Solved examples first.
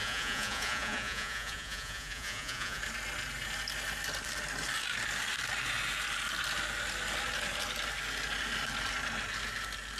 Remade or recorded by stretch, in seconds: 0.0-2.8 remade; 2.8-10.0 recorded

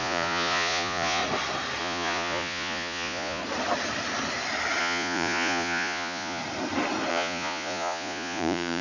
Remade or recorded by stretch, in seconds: 0.0-1.2 remade; 1.2-1.8 recorded; 1.8-3.4 remade; 3.4-4.8 recorded; 4.8-6.4 remade; 6.4-7.1 recorded; 7.1-8.8 remade

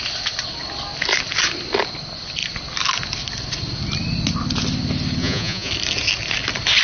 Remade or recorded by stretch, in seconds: 0.0-5.2 recorded; 5.2-5.7 remade; 5.7-6.8 recorded

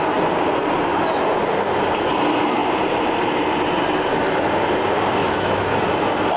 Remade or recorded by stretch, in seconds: 0.0-5.2 recorded; 5.2-5.8 remade; 5.8-6.4 recorded

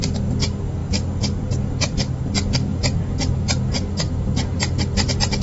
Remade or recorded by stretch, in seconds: 0.0-5.4 recorded

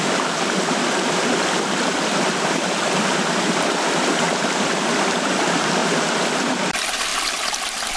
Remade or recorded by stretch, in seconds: 0.0-8.0 remade

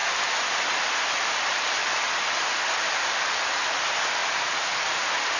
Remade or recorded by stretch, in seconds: 0.0-5.4 recorded

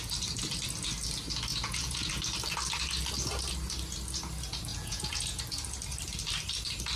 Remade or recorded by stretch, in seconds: 0.0-1.5 recorded; 1.5-2.1 remade; 2.1-4.7 recorded; 4.7-5.4 remade; 5.4-7.0 recorded